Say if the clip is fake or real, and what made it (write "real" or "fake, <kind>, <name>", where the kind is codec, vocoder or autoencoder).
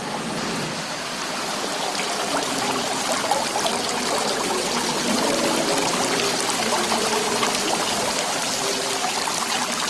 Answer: real